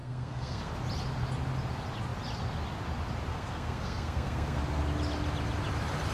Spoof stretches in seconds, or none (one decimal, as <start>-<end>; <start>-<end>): 0.0-0.7; 3.3-4.6